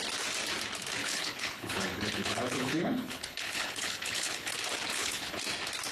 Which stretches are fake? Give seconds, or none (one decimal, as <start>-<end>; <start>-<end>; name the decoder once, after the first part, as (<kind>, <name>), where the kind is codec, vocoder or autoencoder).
1.0-4.5 (codec, HILCodec); 4.9-5.4